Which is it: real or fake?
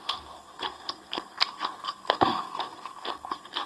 fake